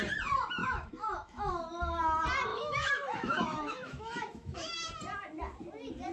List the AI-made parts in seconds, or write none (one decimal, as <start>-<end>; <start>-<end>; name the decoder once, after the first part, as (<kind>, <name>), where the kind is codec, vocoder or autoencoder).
0.6-1.5 (autoencoder, DAC-VAE); 2.5-4.9